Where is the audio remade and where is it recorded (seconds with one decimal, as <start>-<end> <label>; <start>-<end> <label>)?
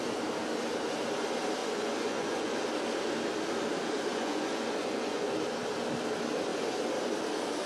0.0-1.6 recorded; 1.6-2.5 remade; 2.5-4.1 recorded; 4.1-5.3 remade; 5.3-7.7 recorded